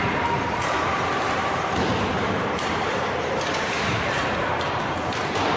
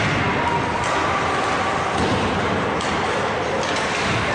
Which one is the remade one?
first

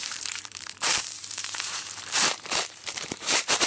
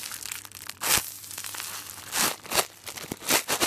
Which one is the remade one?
first